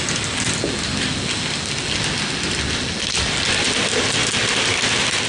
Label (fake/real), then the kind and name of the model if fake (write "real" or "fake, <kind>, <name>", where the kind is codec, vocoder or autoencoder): real